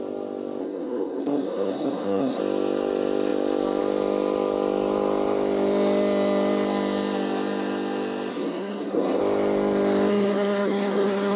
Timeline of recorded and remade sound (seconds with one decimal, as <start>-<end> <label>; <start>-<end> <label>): 0.0-0.6 recorded; 0.6-2.4 remade; 2.4-8.3 recorded; 8.3-9.2 remade; 9.2-10.1 recorded; 10.1-11.4 remade